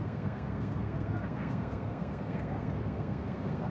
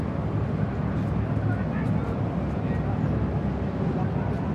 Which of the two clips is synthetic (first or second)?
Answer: first